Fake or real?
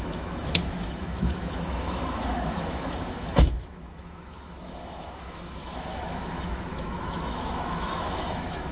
fake